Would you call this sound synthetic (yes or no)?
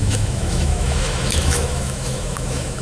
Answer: yes